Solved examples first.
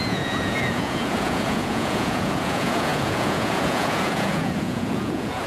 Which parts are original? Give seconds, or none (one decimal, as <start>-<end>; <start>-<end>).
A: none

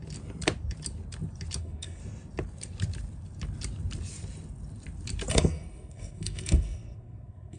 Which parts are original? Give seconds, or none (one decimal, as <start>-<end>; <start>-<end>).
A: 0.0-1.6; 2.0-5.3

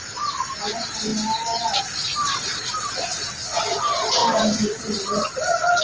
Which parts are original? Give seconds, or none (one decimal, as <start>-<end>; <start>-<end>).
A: 0.0-4.2; 4.8-5.8

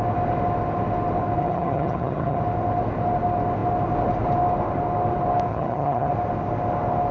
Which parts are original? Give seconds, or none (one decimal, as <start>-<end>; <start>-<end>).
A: 0.0-1.4; 2.4-5.5; 6.1-7.1